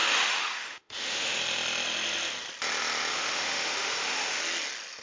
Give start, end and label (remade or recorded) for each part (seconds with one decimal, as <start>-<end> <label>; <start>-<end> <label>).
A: 0.0-1.4 remade; 1.4-3.1 recorded; 3.1-4.4 remade; 4.4-5.0 recorded